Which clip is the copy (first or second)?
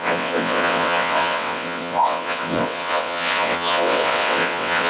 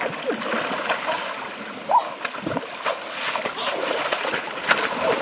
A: first